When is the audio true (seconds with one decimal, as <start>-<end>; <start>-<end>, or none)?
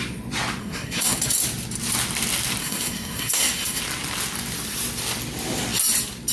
0.0-0.6; 1.2-2.6; 3.8-6.3